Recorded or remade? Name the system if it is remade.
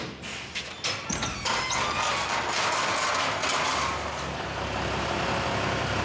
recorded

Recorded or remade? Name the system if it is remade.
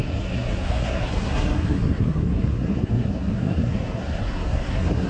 remade, codec, SNAC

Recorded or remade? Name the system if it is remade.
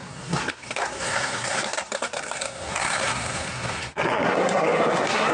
remade, codec, SNAC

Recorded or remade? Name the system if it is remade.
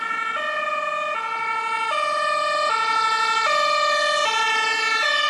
recorded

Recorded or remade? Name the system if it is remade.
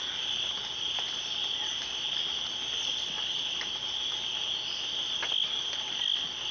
recorded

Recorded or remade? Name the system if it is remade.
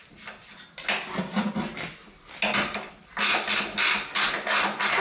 recorded